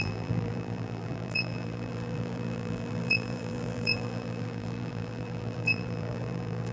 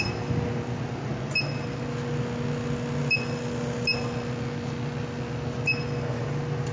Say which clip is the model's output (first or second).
first